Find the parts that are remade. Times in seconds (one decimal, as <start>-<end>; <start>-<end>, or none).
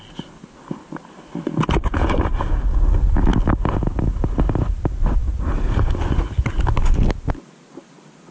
none